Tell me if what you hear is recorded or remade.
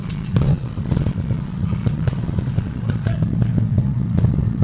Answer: remade